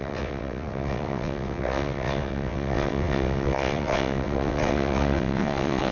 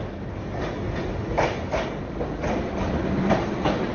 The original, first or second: second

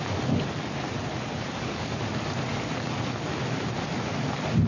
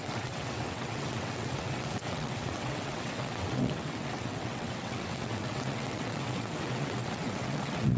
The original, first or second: first